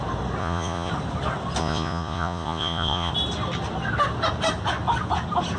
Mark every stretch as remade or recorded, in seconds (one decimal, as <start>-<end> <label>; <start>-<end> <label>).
0.0-0.4 recorded; 0.4-0.9 remade; 0.9-1.6 recorded; 1.6-3.1 remade; 3.1-5.6 recorded